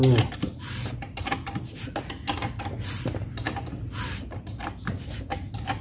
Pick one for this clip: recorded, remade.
recorded